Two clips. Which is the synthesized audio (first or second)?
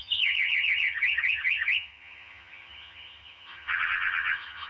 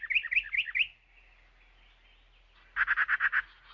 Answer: first